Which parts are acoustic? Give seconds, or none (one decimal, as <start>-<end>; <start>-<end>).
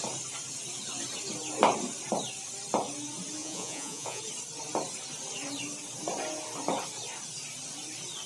0.0-3.4; 4.2-8.3